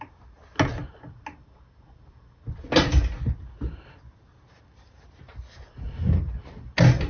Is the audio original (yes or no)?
yes